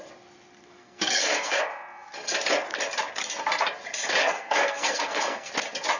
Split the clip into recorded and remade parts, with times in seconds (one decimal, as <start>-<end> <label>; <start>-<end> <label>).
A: 0.0-0.8 recorded; 0.8-1.6 remade; 1.6-4.2 recorded; 4.2-5.5 remade; 5.5-6.0 recorded